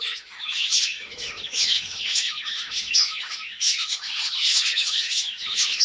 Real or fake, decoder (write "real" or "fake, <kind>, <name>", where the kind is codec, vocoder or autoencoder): fake, autoencoder, DAC-VAE